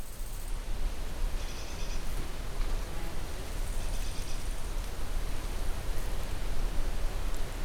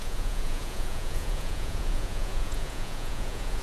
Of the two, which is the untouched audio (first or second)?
first